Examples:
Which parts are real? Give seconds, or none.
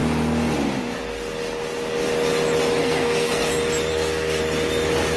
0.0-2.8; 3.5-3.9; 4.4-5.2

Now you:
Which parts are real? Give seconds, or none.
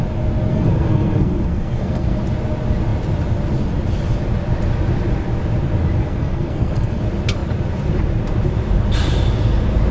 0.0-0.5; 2.2-6.0; 7.0-9.9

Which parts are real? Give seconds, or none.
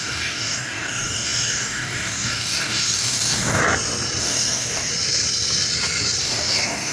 3.6-4.2; 4.9-6.2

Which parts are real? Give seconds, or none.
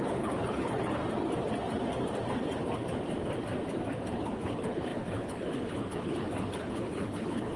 1.0-4.2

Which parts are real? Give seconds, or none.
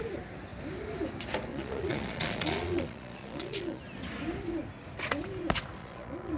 0.0-1.5; 3.8-5.8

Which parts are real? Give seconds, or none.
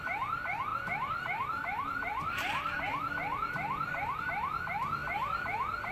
0.0-0.7; 4.2-5.0